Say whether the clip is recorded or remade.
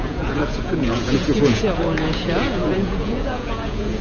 remade